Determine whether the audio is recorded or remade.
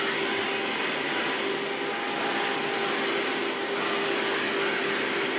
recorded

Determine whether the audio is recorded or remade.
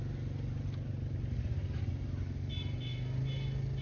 recorded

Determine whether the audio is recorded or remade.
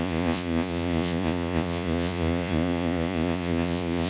remade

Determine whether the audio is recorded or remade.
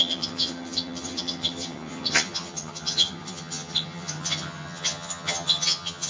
remade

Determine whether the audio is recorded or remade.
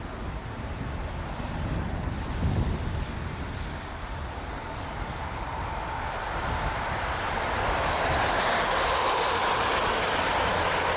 recorded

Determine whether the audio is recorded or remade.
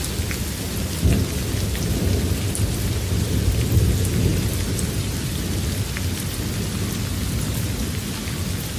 recorded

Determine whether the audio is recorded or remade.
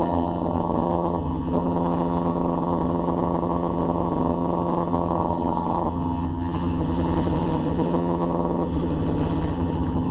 remade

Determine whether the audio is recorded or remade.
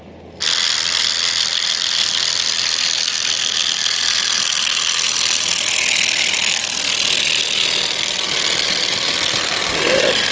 recorded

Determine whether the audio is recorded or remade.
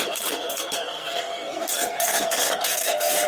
remade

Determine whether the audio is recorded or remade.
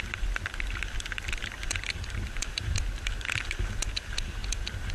remade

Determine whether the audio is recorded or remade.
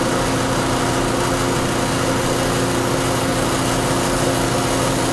recorded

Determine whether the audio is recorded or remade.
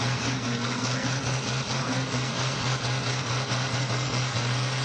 remade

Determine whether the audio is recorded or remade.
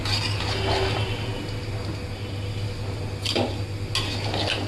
recorded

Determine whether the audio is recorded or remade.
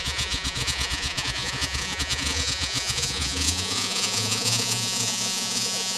remade